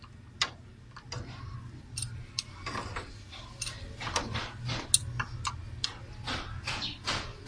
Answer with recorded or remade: recorded